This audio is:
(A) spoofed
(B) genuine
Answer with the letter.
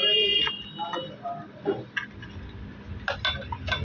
B